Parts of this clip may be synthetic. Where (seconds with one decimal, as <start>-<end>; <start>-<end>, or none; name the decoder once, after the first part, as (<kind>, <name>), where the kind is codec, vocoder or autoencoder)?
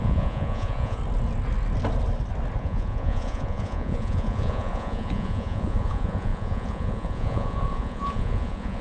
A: 0.0-1.0 (vocoder, Vocos); 2.6-8.8